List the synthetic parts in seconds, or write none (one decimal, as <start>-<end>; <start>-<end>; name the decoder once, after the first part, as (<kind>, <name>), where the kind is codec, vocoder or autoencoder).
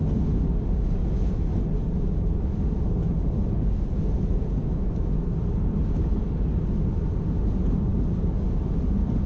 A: 4.6-5.4 (autoencoder, DAC-VAE)